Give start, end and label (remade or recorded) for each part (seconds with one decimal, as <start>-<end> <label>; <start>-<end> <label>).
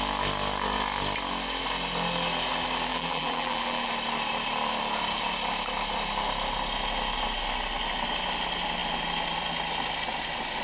0.0-2.9 recorded; 2.9-3.9 remade; 3.9-10.6 recorded